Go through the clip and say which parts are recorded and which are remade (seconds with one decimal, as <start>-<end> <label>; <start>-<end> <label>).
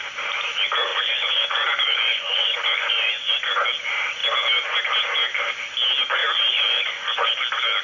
0.0-0.9 recorded; 0.9-3.5 remade; 3.5-6.2 recorded; 6.2-7.3 remade; 7.3-7.8 recorded